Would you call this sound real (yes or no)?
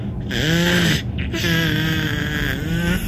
yes